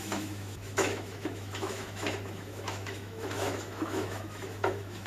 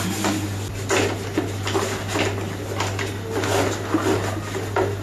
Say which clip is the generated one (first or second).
first